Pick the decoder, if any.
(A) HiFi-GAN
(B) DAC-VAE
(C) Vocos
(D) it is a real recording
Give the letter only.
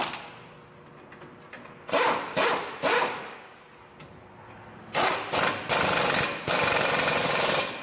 D